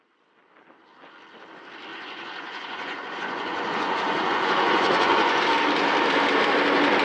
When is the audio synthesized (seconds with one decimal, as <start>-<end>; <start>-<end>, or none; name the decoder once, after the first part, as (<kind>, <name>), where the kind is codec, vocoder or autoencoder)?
1.9-5.4 (vocoder, Vocos)